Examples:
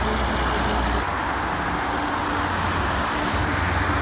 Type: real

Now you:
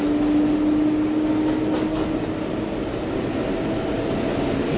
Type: real